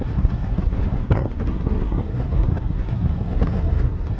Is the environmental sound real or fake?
fake